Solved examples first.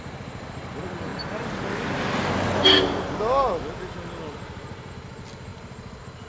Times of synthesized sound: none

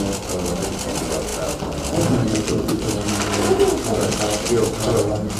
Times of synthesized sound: none

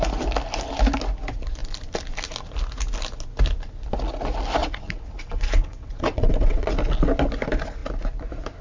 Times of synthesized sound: 4.6-6.7 (vocoder, WaveNeXt)

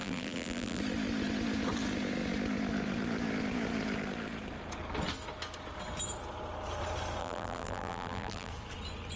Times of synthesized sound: 0.0-0.8 (vocoder, BigVGAN v2); 7.2-8.5

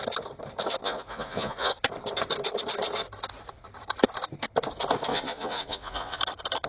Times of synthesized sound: 0.8-1.7 (vocoder, Vocos); 5.1-6.2

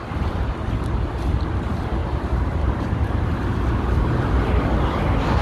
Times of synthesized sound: 2.0-4.3 (vocoder, BigVGAN v2)

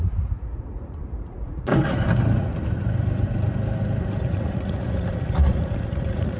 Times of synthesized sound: 0.0-1.7 (vocoder, Vocos); 4.2-6.4